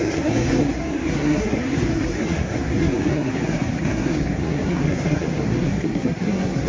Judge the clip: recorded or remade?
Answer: remade